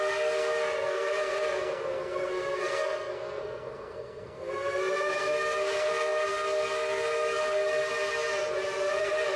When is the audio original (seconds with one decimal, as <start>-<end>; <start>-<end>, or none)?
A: 7.9-9.0

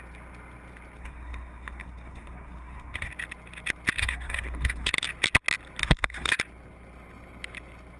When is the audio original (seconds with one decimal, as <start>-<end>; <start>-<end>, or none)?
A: 0.0-1.0; 3.1-4.0; 4.9-5.8; 6.3-8.0

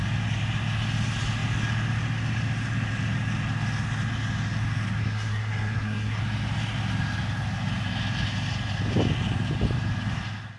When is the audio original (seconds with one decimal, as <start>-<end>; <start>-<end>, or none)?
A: 0.0-5.0; 6.2-10.6

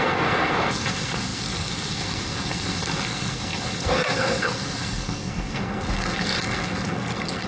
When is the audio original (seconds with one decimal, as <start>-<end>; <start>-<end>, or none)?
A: none

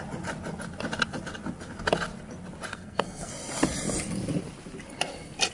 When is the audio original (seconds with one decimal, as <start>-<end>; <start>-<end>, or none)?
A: 0.0-2.7; 3.3-5.5

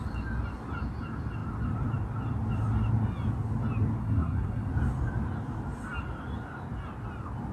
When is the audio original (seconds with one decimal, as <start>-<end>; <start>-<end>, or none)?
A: 0.0-4.0; 4.7-7.5

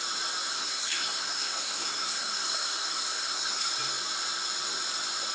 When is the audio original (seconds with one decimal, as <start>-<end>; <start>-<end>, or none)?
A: 0.0-0.5; 3.7-5.3